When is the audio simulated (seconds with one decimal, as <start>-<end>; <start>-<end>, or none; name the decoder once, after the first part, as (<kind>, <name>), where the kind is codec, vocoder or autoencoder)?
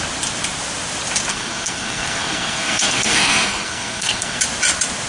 1.3-4.4 (codec, SNAC)